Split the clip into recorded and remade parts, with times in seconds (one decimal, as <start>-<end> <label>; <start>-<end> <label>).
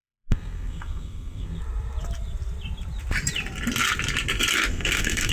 0.0-1.6 remade; 1.6-4.7 recorded; 4.7-5.3 remade